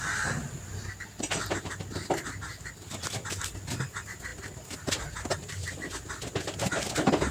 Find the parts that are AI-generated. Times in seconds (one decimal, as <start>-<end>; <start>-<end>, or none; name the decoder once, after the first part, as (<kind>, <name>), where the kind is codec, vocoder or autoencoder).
none